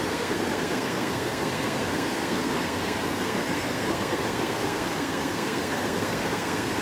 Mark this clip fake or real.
fake